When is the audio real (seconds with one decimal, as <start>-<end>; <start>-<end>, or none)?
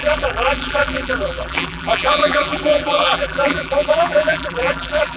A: none